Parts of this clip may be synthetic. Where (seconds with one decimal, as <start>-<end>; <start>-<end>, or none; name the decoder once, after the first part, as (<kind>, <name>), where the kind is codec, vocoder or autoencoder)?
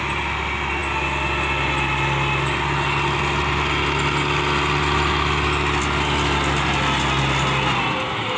none